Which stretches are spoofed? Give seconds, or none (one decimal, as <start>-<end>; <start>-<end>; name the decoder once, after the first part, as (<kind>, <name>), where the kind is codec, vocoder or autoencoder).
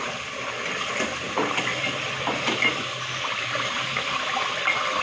0.0-5.0 (vocoder, BigVGAN v2)